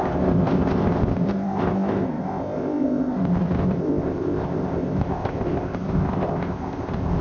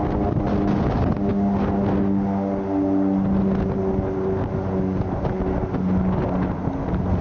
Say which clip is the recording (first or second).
second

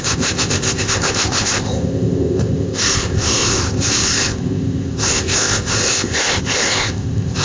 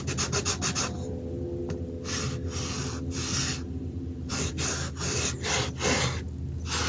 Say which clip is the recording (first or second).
second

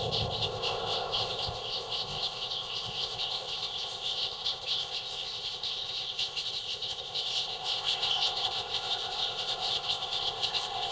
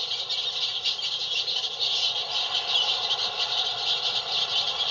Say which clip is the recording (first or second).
second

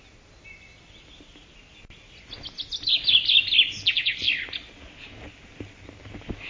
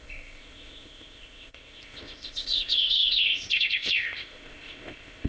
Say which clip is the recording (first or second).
first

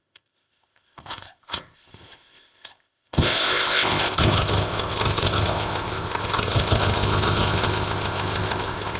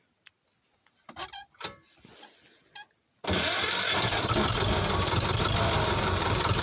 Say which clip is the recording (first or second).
second